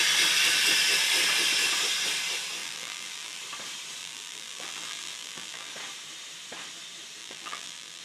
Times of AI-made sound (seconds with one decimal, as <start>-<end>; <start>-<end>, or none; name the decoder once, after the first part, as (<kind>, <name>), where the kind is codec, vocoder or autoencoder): 2.6-3.4 (vocoder, BigVGAN v2); 4.0-5.7; 7.2-8.0